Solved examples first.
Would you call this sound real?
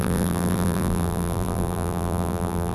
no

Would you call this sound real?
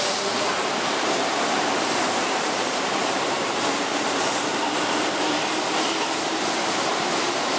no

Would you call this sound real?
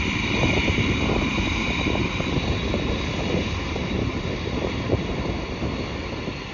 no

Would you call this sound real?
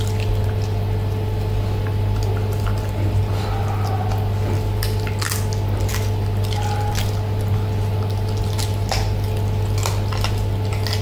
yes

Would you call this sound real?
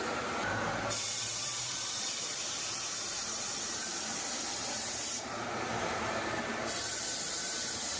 no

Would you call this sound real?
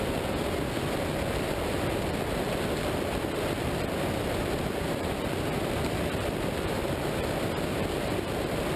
no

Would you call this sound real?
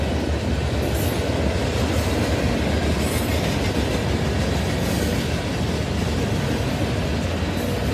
yes